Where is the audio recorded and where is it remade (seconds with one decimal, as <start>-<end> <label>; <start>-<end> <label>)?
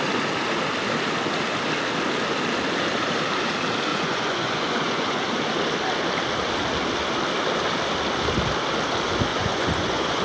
0.0-3.9 recorded; 3.9-5.2 remade; 5.2-9.3 recorded; 9.3-10.2 remade